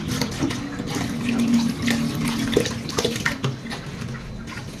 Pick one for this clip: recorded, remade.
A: recorded